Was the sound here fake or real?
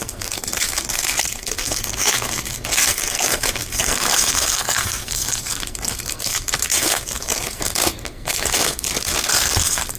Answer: fake